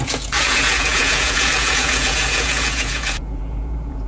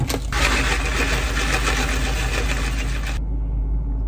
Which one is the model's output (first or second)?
first